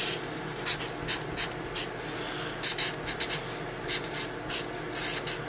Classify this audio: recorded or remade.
recorded